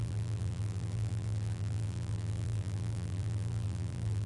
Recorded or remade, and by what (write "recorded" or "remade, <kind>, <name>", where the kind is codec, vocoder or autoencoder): remade, vocoder, BigVGAN v2